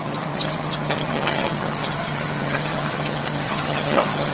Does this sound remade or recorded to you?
remade